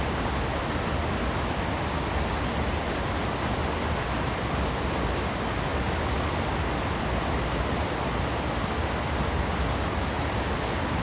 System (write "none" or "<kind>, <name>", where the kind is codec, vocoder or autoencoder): none